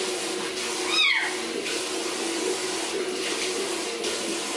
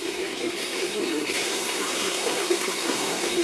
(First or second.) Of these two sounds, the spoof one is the second